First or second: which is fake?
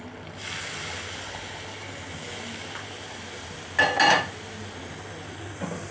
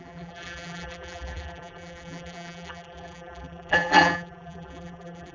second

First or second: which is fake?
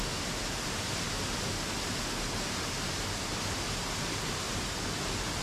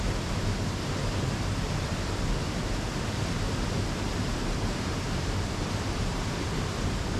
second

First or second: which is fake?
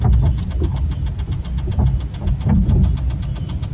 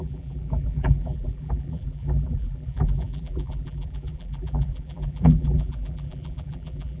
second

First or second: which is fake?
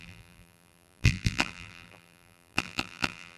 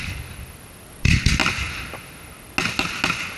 first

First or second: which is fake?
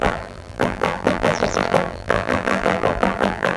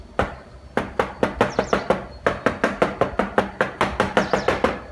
first